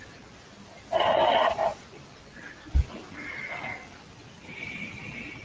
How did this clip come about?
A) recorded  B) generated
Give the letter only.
A